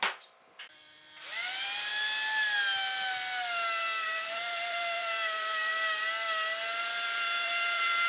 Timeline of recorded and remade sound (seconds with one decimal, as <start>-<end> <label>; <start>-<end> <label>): 0.0-1.9 remade; 1.9-3.8 recorded; 3.8-5.7 remade; 5.7-6.8 recorded; 6.8-8.1 remade